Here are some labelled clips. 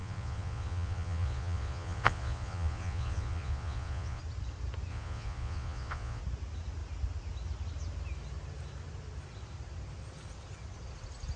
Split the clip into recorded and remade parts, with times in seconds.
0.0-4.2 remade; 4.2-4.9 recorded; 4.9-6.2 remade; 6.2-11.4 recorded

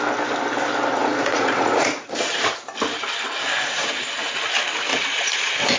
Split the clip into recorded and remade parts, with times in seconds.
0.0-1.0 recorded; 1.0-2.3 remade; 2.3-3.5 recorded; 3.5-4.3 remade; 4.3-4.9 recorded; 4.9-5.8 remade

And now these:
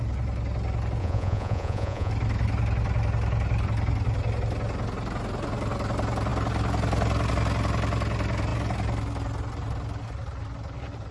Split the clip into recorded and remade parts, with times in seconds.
0.0-1.0 recorded; 1.0-2.1 remade; 2.1-11.1 recorded

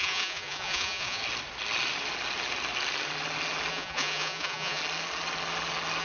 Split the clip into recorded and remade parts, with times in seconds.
0.0-1.2 remade; 1.2-3.7 recorded; 3.7-4.8 remade; 4.8-6.0 recorded